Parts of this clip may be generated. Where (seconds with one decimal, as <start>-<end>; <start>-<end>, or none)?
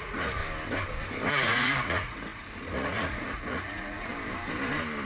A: 0.0-0.4; 1.3-4.1